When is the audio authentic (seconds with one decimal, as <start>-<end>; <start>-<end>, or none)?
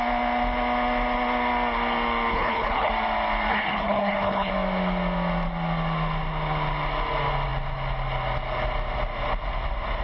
0.0-2.3; 2.9-3.5; 4.5-10.0